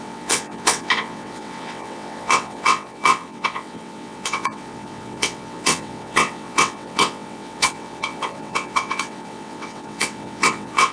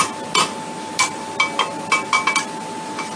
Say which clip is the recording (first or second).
second